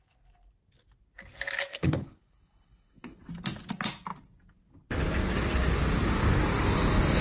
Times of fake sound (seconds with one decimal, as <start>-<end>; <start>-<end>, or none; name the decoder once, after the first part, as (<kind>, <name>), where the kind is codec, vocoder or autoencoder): 1.7-3.3 (codec, HILCodec)